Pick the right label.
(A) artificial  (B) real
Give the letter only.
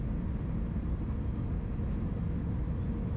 B